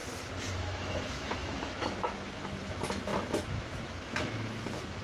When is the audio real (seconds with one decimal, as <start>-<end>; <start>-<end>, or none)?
0.0-0.6